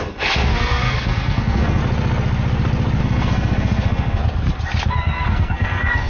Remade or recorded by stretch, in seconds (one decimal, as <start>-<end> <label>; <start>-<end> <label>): 0.0-1.8 remade; 1.8-3.0 recorded; 3.0-4.2 remade; 4.2-4.9 recorded; 4.9-6.1 remade